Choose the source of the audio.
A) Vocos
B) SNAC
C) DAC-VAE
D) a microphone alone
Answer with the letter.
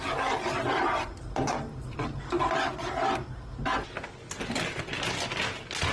D